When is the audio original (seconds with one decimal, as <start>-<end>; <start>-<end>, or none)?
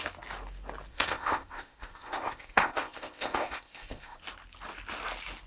0.0-0.9; 4.2-5.5